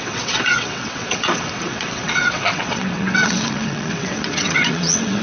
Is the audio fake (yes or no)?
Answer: yes